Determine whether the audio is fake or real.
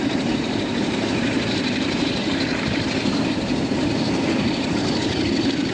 fake